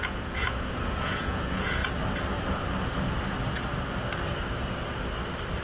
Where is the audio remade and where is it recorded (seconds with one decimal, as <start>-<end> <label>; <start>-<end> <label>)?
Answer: 0.0-1.8 remade; 1.8-5.6 recorded